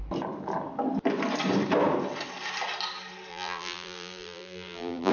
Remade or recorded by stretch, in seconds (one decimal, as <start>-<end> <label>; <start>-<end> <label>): 0.0-3.3 recorded; 3.3-5.1 remade